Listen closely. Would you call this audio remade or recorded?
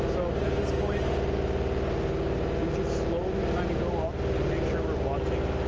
recorded